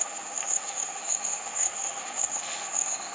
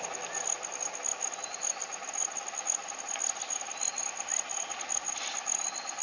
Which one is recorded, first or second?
second